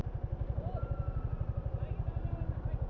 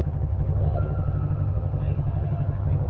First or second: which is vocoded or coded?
second